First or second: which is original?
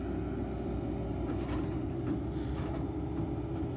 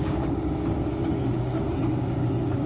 first